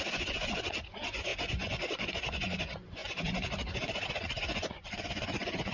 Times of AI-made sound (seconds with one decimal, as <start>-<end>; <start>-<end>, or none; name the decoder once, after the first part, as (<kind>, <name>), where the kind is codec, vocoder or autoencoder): 0.0-5.7 (vocoder, Vocos)